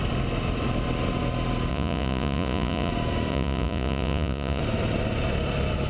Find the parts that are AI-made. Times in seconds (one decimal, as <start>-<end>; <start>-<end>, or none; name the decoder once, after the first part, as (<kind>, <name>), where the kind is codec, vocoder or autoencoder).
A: 1.7-2.9 (vocoder, Vocos); 3.3-4.6